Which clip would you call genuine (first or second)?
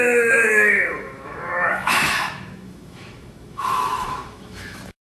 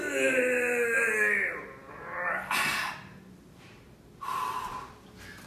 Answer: second